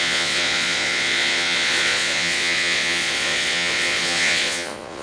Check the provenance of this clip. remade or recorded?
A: remade